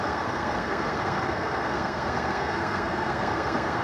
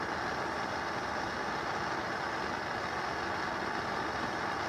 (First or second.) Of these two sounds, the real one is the second